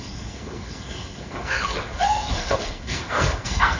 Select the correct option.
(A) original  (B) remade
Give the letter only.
B